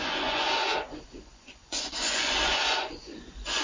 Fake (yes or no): yes